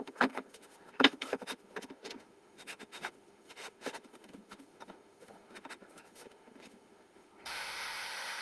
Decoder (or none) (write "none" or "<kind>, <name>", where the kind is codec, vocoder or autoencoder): autoencoder, DAC-VAE